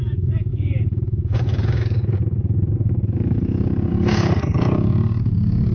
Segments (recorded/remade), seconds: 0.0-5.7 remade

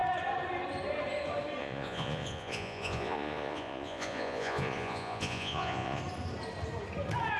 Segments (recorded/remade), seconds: 0.0-1.6 recorded; 1.6-6.0 remade; 6.0-7.4 recorded

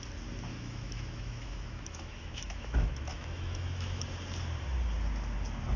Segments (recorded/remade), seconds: 0.0-0.5 recorded; 0.5-4.0 remade; 4.0-5.8 recorded

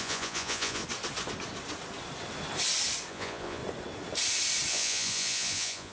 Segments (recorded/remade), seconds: 0.0-0.8 remade; 0.8-3.1 recorded; 3.1-3.6 remade; 3.6-4.7 recorded; 4.7-5.9 remade

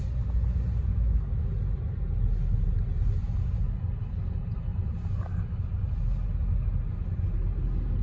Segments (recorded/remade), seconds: 0.0-0.9 recorded; 0.9-1.5 remade; 1.5-8.0 recorded